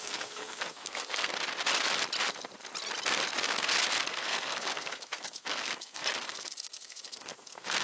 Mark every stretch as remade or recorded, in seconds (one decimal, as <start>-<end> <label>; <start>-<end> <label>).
0.0-1.3 remade; 1.3-4.1 recorded; 4.1-7.8 remade